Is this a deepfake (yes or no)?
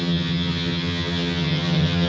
yes